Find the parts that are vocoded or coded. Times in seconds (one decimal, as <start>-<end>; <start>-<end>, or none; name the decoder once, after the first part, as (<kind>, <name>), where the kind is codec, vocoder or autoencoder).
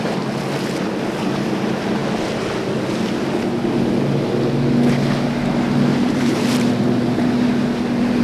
5.9-6.7 (vocoder, BigVGAN v2)